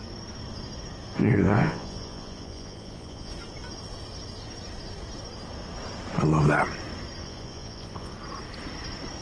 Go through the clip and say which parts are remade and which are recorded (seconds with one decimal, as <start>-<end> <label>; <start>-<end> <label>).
0.0-1.2 recorded; 1.2-3.3 remade; 3.3-7.2 recorded; 7.2-8.1 remade; 8.1-9.2 recorded